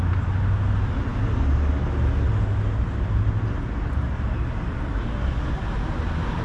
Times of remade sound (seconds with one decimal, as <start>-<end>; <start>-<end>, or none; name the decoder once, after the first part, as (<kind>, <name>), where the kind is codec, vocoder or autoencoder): none